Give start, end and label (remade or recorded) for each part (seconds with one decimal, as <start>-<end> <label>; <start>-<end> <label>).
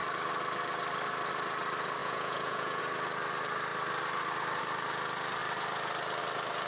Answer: 0.0-2.0 recorded; 2.0-2.8 remade; 2.8-6.7 recorded